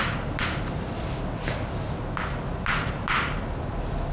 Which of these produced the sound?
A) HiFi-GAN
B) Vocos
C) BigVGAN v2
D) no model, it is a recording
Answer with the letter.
D